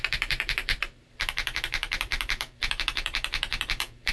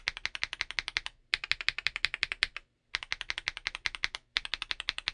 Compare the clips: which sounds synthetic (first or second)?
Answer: first